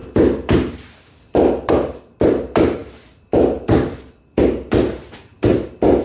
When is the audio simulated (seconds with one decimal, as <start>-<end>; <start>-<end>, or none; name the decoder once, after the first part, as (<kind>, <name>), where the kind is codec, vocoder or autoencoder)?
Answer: 0.0-6.0 (vocoder, BigVGAN v2)